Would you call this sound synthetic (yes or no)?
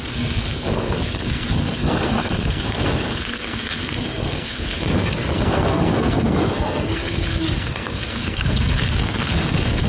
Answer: yes